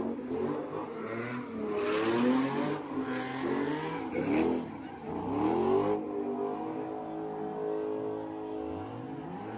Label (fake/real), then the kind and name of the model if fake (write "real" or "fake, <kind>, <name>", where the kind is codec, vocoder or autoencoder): real